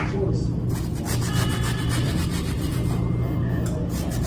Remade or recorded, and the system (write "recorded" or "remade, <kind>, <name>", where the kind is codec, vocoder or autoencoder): recorded